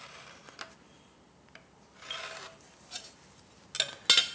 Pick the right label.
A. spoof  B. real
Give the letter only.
B